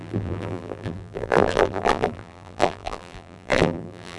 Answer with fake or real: fake